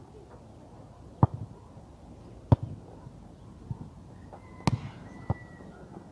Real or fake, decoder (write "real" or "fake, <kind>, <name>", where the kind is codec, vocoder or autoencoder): real